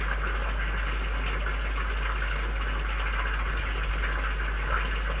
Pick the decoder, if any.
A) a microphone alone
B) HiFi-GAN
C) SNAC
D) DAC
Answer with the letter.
A